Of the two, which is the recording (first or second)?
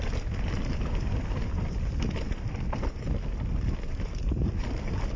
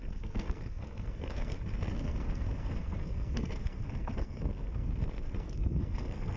first